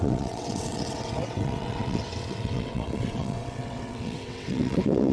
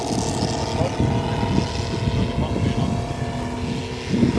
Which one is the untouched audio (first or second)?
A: second